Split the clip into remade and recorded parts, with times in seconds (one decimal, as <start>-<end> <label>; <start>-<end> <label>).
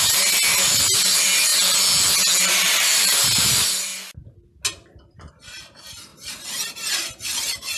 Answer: 0.0-1.5 remade; 1.5-2.4 recorded; 2.4-3.9 remade; 3.9-5.3 recorded; 5.3-7.8 remade